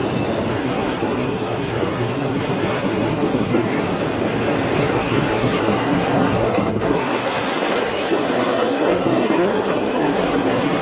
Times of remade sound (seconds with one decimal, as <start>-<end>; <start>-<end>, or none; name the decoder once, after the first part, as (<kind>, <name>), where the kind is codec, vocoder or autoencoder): 0.5-4.0 (codec, SNAC); 4.8-10.8